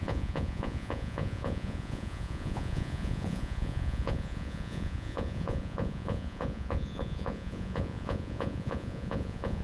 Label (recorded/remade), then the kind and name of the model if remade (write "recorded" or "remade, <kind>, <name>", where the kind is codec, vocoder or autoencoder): remade, vocoder, Vocos